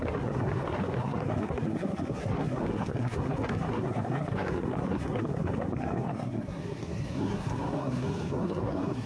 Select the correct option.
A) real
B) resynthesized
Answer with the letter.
B